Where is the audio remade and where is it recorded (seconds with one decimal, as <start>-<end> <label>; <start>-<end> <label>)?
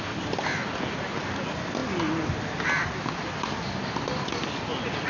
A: 0.0-5.1 recorded